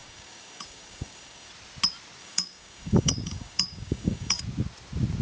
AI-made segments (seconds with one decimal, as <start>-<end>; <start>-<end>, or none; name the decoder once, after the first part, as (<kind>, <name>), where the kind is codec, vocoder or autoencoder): 0.0-1.5 (codec, DAC); 2.2-4.4